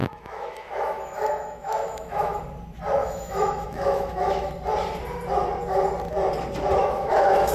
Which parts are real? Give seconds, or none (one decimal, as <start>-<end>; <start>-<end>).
2.4-3.0; 4.5-6.8

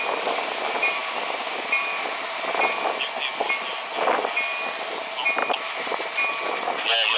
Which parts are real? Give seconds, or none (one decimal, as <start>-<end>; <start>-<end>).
0.0-7.2